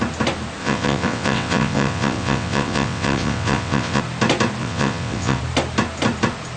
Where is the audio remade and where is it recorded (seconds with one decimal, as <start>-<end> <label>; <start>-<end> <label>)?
0.0-0.6 recorded; 0.6-4.0 remade; 4.0-4.6 recorded; 4.6-5.4 remade; 5.4-6.6 recorded

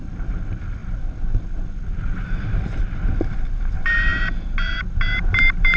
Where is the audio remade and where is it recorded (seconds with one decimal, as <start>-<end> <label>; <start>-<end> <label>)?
0.0-5.8 recorded

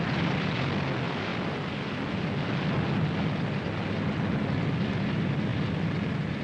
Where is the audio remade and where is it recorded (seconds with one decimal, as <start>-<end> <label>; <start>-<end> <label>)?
0.0-6.4 recorded

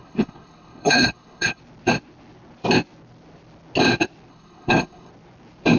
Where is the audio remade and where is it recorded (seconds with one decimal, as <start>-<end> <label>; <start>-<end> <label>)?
0.0-1.6 remade; 1.6-4.3 recorded; 4.3-5.1 remade; 5.1-5.8 recorded

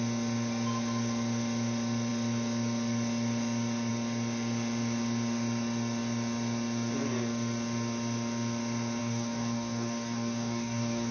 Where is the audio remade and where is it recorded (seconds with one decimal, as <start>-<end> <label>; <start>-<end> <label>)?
0.0-9.0 recorded; 9.0-11.1 remade